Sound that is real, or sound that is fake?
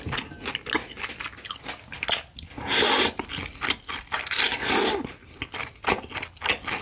real